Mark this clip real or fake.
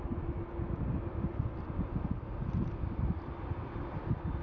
real